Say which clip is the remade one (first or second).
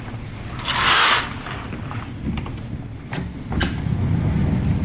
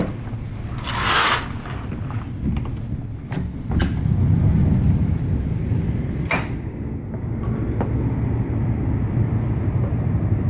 first